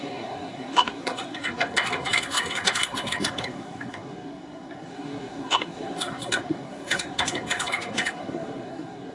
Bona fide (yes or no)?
no